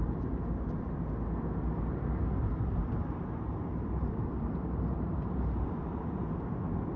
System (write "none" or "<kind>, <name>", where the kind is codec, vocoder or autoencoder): vocoder, BigVGAN v2